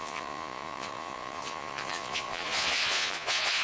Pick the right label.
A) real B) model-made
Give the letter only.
B